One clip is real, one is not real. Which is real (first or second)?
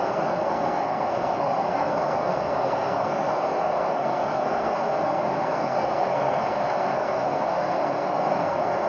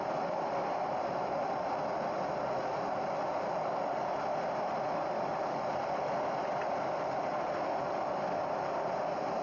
second